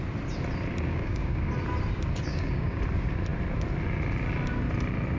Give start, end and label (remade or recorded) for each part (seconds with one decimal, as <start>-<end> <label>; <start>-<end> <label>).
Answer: 0.0-0.9 recorded; 0.9-1.5 remade; 1.5-2.3 recorded; 2.3-2.8 remade; 2.8-5.2 recorded

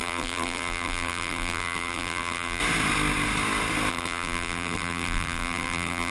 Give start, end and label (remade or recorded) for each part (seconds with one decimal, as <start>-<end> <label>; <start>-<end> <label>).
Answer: 0.0-2.6 remade; 2.6-3.9 recorded; 3.9-6.1 remade

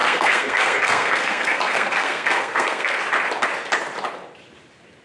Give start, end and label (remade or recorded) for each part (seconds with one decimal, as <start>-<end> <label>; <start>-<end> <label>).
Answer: 0.0-3.0 remade; 3.0-5.0 recorded

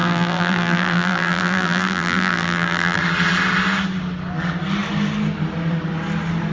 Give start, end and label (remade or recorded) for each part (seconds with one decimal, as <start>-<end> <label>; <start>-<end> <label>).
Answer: 0.0-3.0 remade; 3.0-6.5 recorded

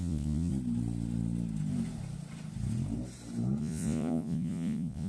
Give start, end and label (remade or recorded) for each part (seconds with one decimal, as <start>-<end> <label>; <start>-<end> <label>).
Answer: 0.0-0.5 remade; 0.5-3.6 recorded; 3.6-5.1 remade